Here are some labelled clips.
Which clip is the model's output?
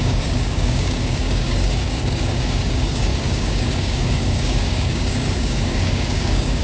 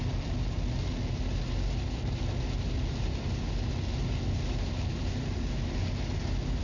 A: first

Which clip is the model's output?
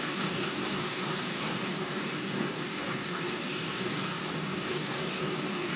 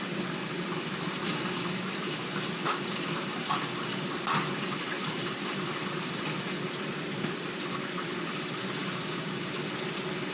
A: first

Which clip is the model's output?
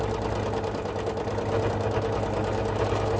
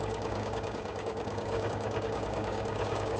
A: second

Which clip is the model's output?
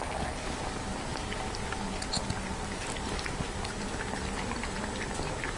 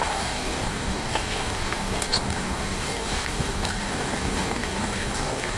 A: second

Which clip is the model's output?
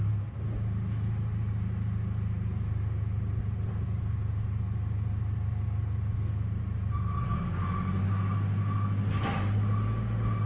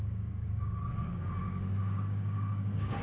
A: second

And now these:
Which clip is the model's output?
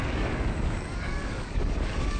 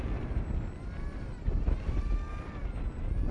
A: first